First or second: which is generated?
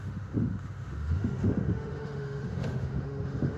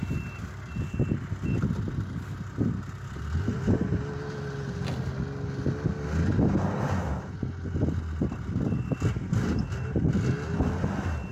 first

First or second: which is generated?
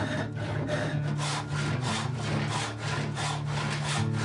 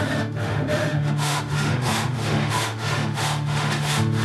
second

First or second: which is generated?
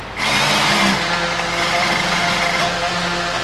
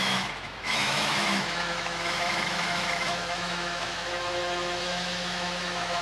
second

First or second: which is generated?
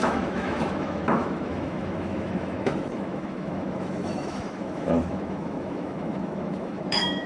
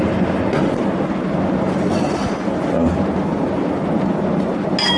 first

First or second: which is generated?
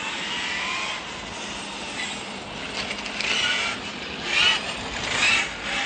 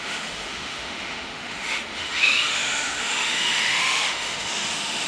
second